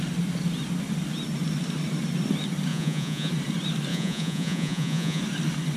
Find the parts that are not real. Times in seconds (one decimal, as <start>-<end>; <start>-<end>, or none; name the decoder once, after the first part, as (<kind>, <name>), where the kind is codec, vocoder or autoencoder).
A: 2.7-3.3 (vocoder, Vocos); 3.9-5.2